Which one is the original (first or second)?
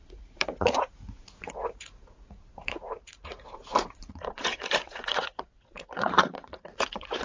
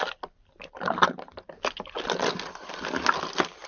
second